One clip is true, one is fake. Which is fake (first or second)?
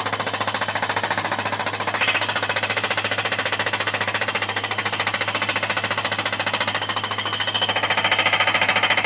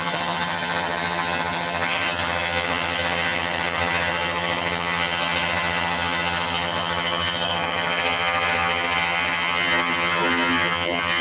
second